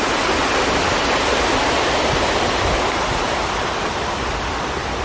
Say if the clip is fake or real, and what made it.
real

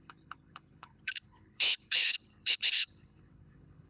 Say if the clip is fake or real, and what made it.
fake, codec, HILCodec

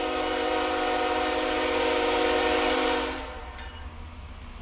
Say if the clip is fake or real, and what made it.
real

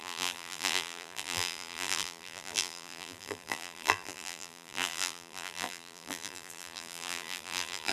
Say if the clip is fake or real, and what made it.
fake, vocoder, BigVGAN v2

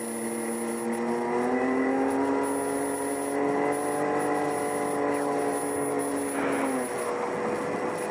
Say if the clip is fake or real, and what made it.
real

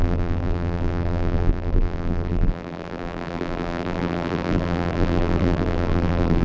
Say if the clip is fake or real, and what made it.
fake, vocoder, BigVGAN v2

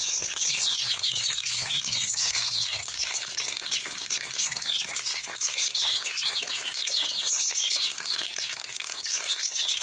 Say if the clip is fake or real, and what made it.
fake, codec, SNAC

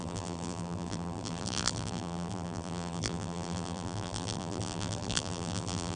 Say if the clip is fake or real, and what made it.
fake, vocoder, BigVGAN v2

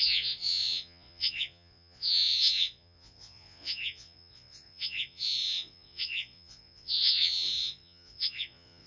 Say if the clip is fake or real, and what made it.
fake, vocoder, Vocos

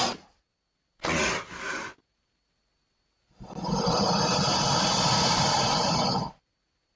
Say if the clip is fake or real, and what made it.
real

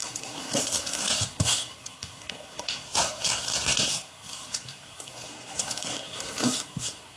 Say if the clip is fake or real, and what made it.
fake, codec, SNAC